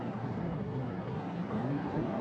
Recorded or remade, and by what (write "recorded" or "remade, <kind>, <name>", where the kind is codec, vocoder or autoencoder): remade, codec, SNAC